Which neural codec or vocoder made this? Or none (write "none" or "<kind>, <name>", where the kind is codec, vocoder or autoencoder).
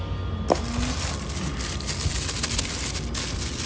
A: none